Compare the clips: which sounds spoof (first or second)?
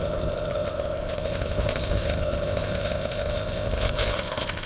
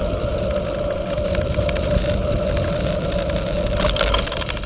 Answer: first